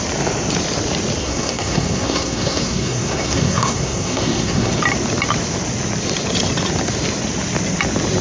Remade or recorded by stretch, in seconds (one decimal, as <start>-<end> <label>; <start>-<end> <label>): 0.0-1.2 recorded; 1.2-4.8 remade; 4.8-8.2 recorded